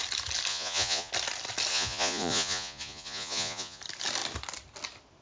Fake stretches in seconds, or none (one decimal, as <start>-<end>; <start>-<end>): 0.5-1.1; 1.7-3.8